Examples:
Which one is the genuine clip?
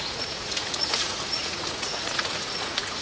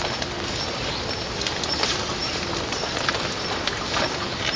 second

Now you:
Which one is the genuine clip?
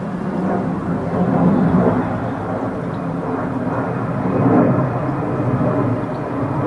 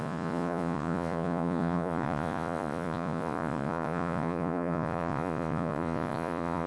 first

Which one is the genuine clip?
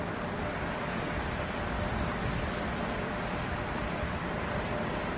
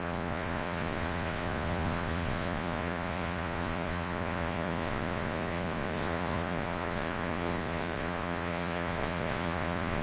first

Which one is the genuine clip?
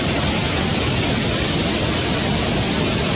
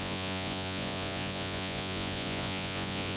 first